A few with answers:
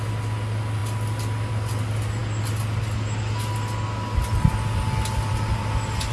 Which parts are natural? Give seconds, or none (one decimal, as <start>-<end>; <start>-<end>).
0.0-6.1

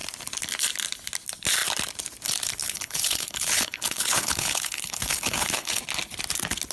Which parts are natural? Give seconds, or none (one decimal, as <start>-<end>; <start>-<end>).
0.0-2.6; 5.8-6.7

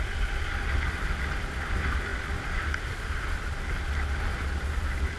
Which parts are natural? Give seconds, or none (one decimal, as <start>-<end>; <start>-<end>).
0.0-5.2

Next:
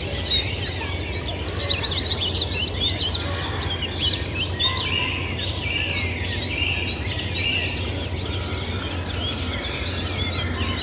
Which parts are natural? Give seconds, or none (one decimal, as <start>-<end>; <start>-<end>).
0.0-10.8

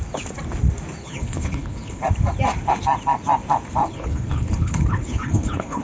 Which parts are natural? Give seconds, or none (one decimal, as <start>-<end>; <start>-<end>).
0.0-1.0; 2.0-3.8

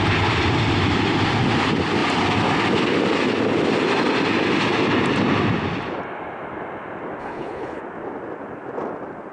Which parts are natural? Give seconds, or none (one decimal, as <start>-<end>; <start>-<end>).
0.0-7.2; 7.8-9.3

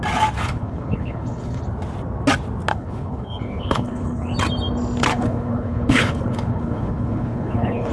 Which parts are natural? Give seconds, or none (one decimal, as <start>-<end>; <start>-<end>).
0.0-0.4; 1.6-2.7; 4.3-5.1

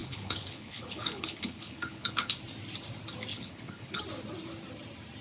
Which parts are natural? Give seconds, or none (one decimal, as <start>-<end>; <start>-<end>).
2.3-3.3; 4.0-5.2